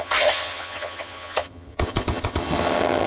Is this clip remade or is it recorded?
remade